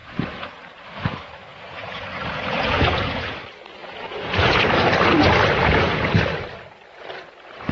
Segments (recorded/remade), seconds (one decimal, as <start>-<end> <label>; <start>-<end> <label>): 0.0-0.6 remade; 0.6-1.5 recorded; 1.5-3.4 remade; 3.4-3.8 recorded; 3.8-4.6 remade; 4.6-5.6 recorded; 5.6-6.1 remade; 6.1-7.7 recorded